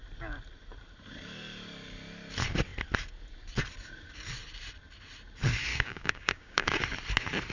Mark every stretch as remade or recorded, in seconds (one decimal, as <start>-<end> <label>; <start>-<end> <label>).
0.0-5.7 recorded; 5.7-6.8 remade; 6.8-7.5 recorded